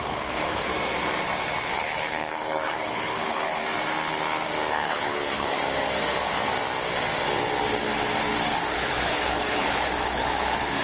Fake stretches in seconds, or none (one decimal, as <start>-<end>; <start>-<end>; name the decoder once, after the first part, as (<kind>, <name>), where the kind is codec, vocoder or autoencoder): 0.0-0.7 (codec, HILCodec); 1.7-3.6; 4.7-5.6; 8.5-10.8